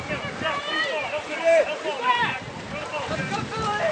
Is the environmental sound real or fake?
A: fake